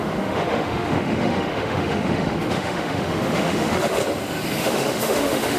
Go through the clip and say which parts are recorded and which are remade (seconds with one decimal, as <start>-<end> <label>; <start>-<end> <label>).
0.0-4.0 remade; 4.0-4.6 recorded; 4.6-5.6 remade